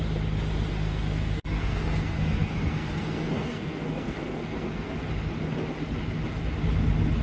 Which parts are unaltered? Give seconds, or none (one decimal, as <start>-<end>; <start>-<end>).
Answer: 0.0-0.7; 5.0-7.2